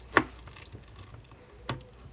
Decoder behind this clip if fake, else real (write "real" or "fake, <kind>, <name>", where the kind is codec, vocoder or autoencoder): real